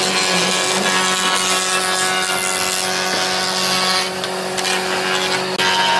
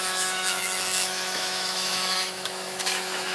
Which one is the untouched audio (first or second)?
first